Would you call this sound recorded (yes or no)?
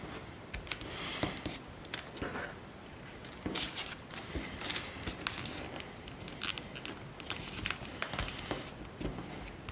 yes